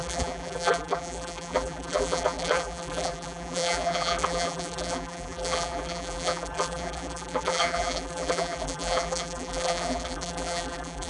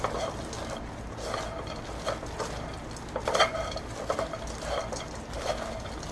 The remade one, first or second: first